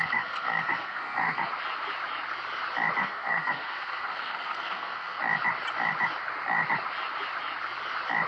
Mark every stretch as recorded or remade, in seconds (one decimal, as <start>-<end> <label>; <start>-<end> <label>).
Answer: 0.0-1.5 remade; 1.5-3.0 recorded; 3.0-5.2 remade; 5.2-8.3 recorded